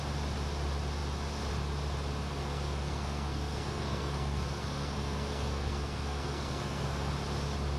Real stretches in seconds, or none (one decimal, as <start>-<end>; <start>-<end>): 0.0-2.4; 7.1-7.8